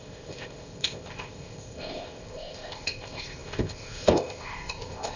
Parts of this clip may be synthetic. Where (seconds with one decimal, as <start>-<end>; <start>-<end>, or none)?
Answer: 0.0-5.2